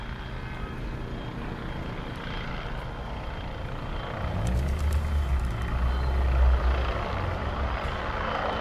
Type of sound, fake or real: real